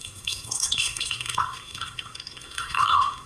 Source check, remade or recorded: remade